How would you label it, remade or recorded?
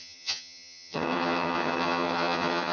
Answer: remade